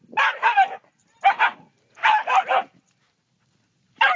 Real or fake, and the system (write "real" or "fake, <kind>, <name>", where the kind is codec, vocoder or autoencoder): real